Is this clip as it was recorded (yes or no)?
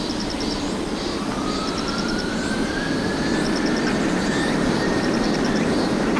no